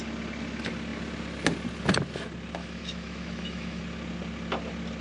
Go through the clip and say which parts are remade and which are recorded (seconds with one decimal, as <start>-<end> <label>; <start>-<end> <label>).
0.0-2.6 recorded; 2.6-3.8 remade; 3.8-5.0 recorded